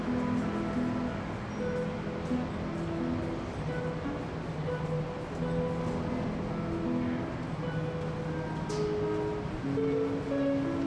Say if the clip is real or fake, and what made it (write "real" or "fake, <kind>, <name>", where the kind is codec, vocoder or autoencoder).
real